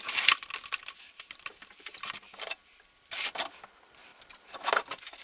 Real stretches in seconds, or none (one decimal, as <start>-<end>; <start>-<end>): 2.6-3.6; 4.1-5.2